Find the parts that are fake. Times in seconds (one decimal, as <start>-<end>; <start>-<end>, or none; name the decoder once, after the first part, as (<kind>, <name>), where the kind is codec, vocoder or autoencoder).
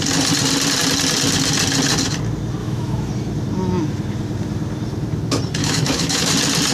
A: 2.6-3.1 (autoencoder, DAC-VAE); 5.6-6.3